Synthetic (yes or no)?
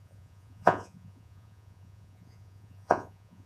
yes